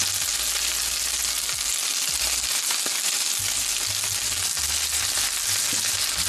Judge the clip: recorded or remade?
recorded